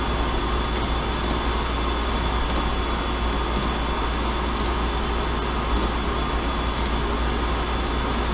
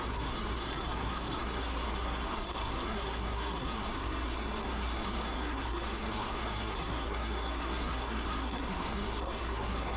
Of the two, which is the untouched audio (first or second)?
first